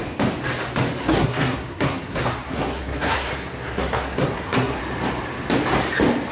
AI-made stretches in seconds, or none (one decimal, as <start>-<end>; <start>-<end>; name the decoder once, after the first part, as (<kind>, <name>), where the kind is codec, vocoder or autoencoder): 1.0-4.8 (codec, SNAC)